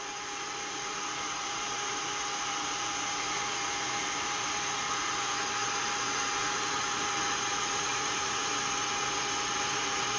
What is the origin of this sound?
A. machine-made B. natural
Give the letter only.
A